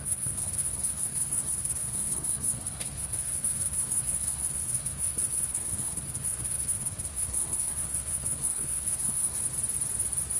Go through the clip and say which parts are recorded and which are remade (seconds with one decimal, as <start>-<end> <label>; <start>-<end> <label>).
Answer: 0.0-9.4 remade; 9.4-10.4 recorded